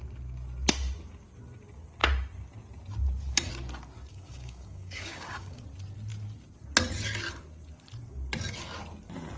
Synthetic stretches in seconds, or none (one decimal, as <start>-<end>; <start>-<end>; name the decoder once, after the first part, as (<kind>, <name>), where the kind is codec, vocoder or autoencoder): 4.1-5.6 (codec, DAC)